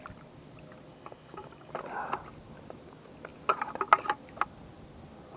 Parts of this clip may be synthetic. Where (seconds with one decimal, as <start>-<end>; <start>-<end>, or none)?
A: 0.9-1.7